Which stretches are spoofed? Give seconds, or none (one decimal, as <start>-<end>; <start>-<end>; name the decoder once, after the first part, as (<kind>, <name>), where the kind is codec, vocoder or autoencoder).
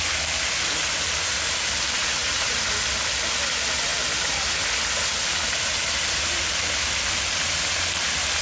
2.0-2.6 (vocoder, Vocos)